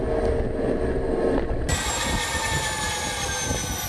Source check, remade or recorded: recorded